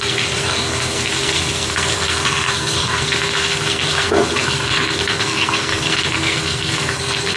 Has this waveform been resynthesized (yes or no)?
yes